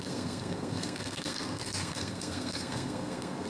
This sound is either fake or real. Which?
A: fake